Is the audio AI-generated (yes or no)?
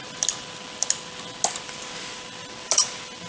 no